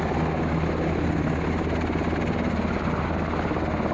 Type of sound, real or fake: real